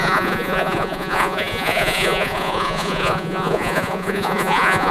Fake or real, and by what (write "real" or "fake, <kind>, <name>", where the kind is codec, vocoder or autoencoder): fake, vocoder, Vocos